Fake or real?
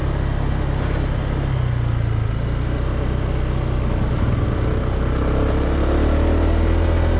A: real